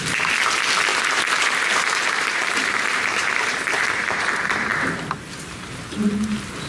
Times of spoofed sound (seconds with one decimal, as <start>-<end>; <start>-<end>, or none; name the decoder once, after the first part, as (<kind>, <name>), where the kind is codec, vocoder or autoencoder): 0.9-4.9 (vocoder, BigVGAN v2)